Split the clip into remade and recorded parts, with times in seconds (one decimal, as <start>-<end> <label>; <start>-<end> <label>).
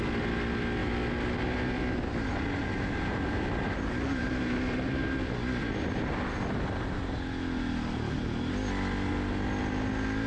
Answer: 0.0-2.6 recorded; 2.6-4.9 remade; 4.9-10.3 recorded